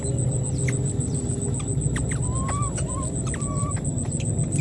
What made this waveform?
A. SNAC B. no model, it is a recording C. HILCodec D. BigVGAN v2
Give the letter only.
B